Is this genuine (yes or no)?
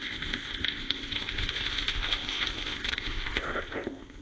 no